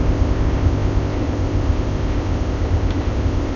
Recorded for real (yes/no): no